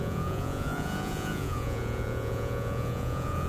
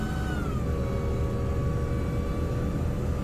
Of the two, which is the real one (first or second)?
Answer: second